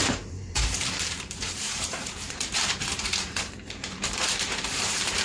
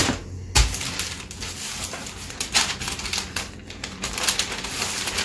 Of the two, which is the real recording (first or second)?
second